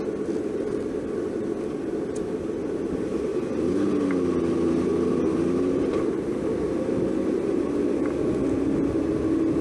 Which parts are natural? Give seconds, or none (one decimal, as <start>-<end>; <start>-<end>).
0.0-9.6